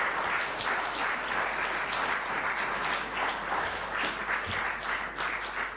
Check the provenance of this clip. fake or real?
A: real